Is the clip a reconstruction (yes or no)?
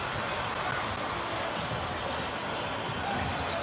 no